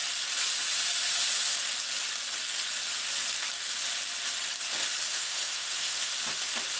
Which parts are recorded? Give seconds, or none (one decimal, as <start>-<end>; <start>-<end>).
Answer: 0.0-5.1; 6.1-6.8